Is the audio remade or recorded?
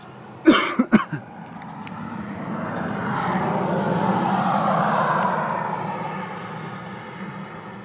recorded